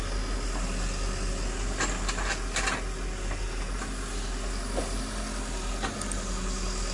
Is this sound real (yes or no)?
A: yes